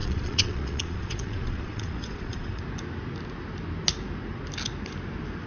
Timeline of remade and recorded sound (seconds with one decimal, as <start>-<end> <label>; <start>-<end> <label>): 0.0-2.6 remade; 2.6-5.5 recorded